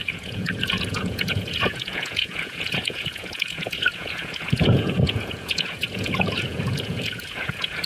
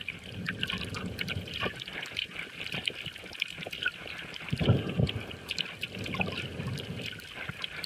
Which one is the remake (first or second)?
first